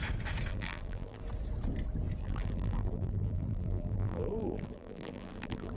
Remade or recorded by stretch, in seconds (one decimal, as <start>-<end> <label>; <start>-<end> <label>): 0.0-0.5 recorded; 0.5-1.2 remade; 1.2-2.2 recorded; 2.2-5.8 remade